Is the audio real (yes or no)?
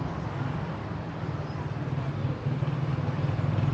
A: yes